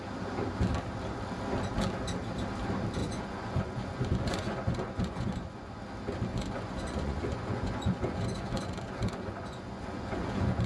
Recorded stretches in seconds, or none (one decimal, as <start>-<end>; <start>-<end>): 0.0-3.0; 5.8-6.3